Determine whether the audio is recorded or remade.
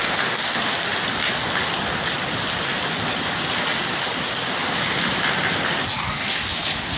recorded